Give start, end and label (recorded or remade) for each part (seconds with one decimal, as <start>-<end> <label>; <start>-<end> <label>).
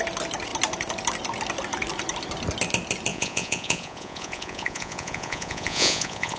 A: 0.0-3.1 recorded; 3.1-6.4 remade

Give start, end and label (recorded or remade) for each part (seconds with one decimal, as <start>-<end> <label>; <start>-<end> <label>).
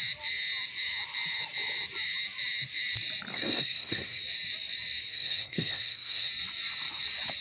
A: 0.0-3.3 recorded; 3.3-4.2 remade; 4.2-5.1 recorded; 5.1-6.3 remade; 6.3-7.4 recorded